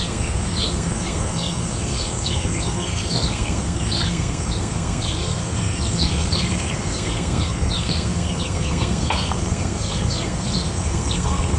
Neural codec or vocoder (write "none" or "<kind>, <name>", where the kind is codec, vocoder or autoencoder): codec, SNAC